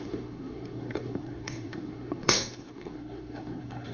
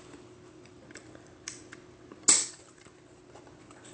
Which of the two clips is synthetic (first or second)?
first